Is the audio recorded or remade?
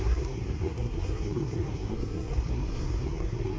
remade